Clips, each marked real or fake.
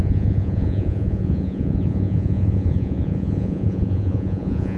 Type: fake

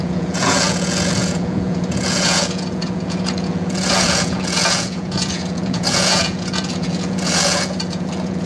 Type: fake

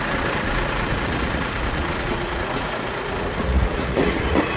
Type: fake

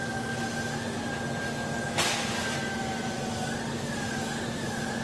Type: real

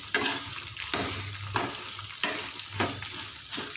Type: real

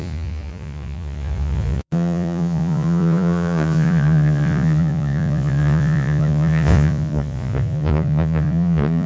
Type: fake